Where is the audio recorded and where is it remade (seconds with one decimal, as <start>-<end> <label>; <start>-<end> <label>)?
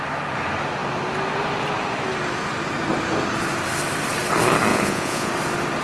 0.0-4.7 recorded; 4.7-5.3 remade; 5.3-5.8 recorded